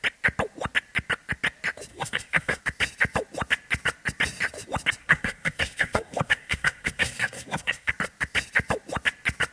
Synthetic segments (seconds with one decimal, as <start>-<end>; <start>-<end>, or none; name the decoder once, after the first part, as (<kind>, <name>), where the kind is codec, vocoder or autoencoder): 1.9-2.6 (codec, SNAC); 5.0-7.9